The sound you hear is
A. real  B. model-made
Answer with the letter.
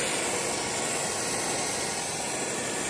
A